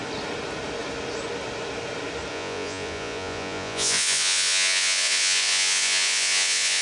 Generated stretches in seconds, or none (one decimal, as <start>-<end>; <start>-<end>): 2.3-6.8